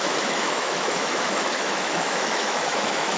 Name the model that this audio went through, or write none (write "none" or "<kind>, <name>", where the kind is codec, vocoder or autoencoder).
autoencoder, DAC-VAE